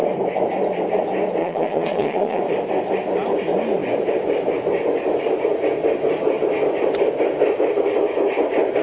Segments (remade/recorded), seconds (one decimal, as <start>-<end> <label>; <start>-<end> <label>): 0.0-1.4 recorded; 1.4-2.4 remade; 2.4-8.8 recorded

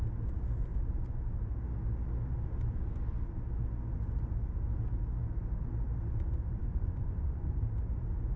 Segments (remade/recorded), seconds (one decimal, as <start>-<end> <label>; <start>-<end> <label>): 0.0-6.6 recorded; 6.6-7.6 remade; 7.6-8.4 recorded